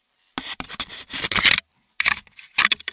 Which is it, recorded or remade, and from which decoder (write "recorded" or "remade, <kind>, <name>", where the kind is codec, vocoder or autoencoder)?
recorded